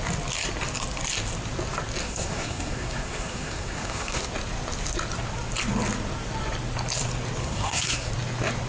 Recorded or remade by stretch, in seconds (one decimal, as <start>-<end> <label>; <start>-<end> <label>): 0.0-2.0 recorded; 2.0-4.2 remade; 4.2-7.4 recorded; 7.4-8.1 remade; 8.1-8.7 recorded